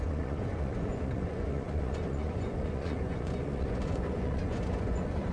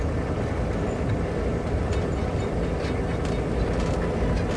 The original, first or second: second